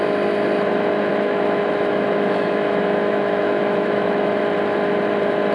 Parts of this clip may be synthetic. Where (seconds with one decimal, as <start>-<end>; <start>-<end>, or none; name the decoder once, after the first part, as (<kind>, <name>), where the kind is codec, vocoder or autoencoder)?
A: 1.1-4.4 (autoencoder, DAC-VAE)